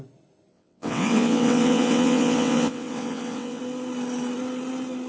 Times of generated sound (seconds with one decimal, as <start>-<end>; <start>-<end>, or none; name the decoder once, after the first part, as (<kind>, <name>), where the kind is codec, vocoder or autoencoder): 0.5-3.6 (vocoder, WaveNeXt)